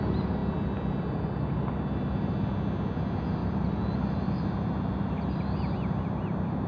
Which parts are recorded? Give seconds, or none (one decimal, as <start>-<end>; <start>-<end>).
0.0-3.4; 5.1-6.7